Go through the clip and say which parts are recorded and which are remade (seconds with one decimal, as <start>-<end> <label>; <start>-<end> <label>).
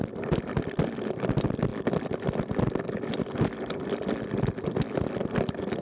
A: 0.0-5.8 recorded